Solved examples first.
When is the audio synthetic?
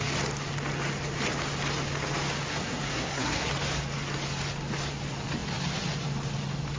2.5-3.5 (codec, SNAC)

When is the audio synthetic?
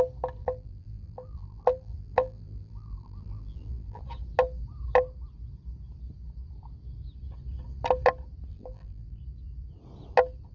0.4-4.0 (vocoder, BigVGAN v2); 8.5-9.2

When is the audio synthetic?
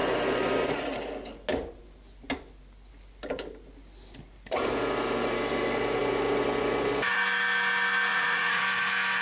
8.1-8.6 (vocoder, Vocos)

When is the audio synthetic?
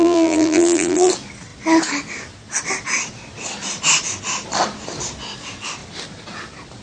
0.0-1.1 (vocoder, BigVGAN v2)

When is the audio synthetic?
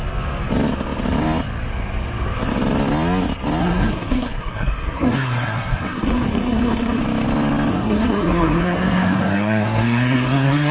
3.6-7.0 (codec, SNAC); 7.7-10.7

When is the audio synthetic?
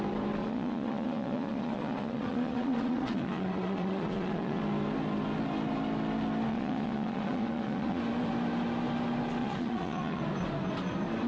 0.4-4.6 (vocoder, Vocos); 6.5-8.0; 9.4-10.2